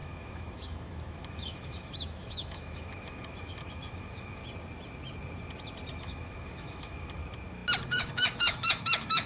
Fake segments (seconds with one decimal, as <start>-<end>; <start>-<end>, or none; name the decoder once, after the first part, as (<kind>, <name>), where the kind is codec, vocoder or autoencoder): 0.0-4.4 (autoencoder, DAC-VAE); 6.0-7.2; 7.8-9.3